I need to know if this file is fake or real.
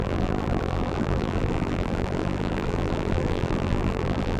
fake